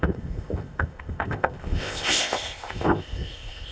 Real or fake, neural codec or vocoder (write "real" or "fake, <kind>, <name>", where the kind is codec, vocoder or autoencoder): fake, codec, ZipCodec